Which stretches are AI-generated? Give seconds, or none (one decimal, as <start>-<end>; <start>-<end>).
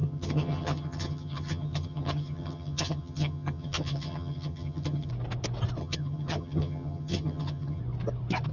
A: 0.0-5.1; 5.8-7.8